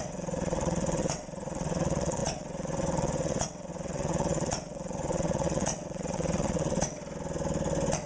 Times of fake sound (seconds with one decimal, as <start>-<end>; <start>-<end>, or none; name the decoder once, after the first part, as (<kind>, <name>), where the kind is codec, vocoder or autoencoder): 0.0-7.0 (vocoder, WaveNeXt)